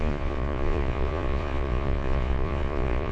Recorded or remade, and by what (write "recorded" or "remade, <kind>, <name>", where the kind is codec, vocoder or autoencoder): remade, vocoder, Vocos